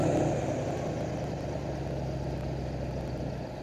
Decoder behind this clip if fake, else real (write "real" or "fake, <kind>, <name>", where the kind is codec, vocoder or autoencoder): real